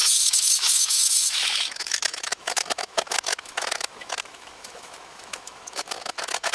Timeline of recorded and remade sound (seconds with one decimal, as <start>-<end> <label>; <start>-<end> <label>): 0.0-6.5 remade